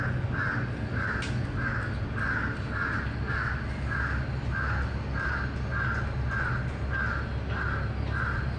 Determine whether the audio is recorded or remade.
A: recorded